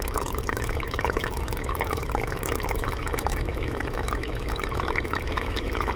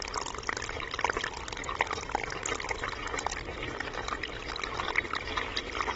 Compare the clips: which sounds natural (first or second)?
second